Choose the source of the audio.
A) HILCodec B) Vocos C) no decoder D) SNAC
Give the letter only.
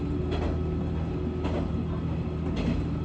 C